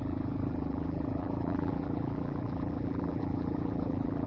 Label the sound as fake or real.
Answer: fake